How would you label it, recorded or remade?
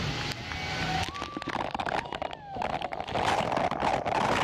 recorded